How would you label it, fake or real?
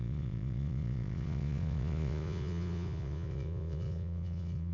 fake